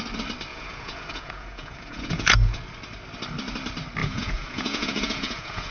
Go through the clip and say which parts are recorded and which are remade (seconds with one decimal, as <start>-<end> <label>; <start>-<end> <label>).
0.0-0.5 recorded; 0.5-2.6 remade; 2.6-4.0 recorded; 4.0-5.7 remade